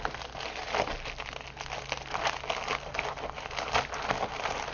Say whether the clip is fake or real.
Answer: real